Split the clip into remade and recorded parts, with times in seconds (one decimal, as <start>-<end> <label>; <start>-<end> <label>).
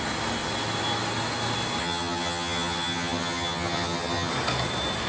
0.0-1.8 recorded; 1.8-4.3 remade; 4.3-5.1 recorded